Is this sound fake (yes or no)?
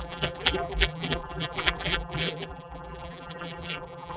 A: yes